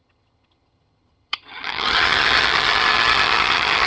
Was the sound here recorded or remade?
remade